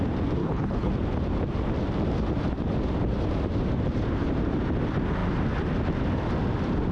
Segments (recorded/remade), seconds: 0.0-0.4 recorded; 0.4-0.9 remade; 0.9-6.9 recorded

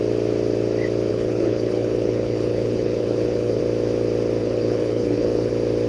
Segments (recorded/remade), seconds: 0.0-1.1 recorded; 1.1-3.6 remade; 3.6-4.4 recorded; 4.4-5.5 remade; 5.5-5.9 recorded

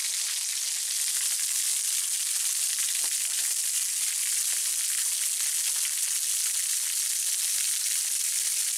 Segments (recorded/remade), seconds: 0.0-8.8 recorded

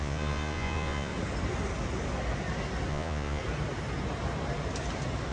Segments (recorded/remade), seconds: 0.0-1.1 remade; 1.1-2.9 recorded; 2.9-3.4 remade; 3.4-5.3 recorded

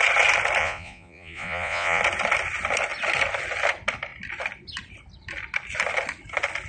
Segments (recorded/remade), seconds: 0.0-0.6 recorded; 0.6-2.0 remade; 2.0-6.7 recorded

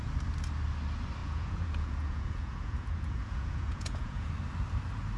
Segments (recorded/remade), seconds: 0.0-1.2 recorded; 1.2-4.3 remade; 4.3-5.2 recorded